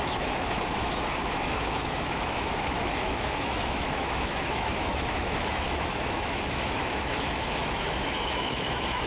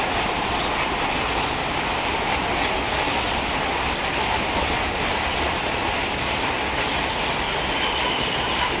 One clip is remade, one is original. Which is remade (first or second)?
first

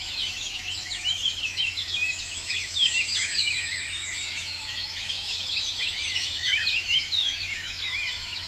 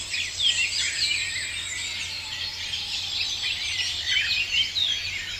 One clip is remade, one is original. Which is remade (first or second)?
first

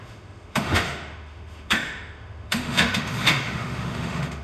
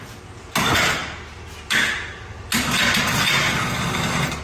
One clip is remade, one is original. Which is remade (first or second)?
first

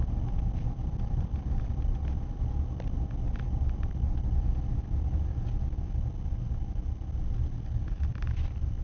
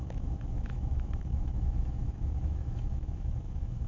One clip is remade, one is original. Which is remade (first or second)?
second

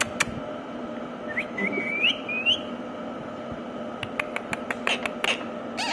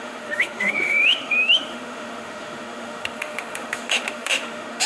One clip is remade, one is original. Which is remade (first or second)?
second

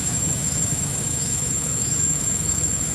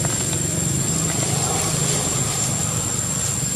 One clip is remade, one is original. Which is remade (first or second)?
first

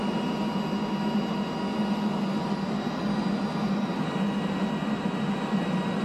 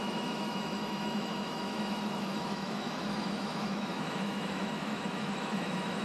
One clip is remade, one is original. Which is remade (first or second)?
second